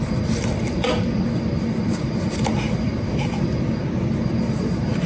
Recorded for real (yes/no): no